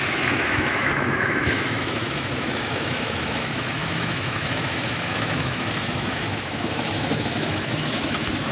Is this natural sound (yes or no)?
no